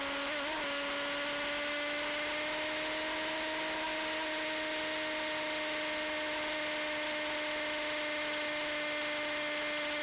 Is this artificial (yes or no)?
no